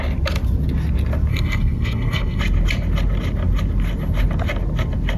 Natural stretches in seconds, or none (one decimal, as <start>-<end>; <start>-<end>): 0.0-1.3; 2.4-5.2